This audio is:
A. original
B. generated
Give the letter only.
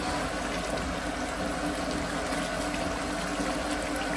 A